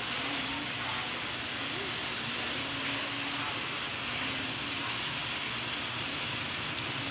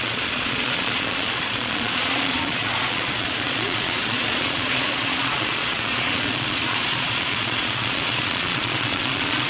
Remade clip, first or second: second